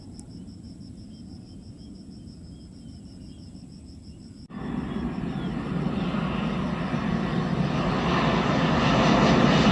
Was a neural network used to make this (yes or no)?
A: no